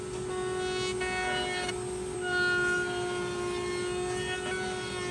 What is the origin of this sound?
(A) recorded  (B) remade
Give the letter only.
A